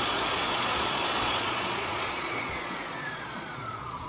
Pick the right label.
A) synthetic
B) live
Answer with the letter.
A